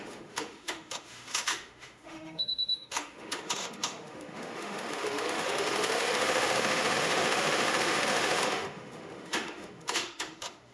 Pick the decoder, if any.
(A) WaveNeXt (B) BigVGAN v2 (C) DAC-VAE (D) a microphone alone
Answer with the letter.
C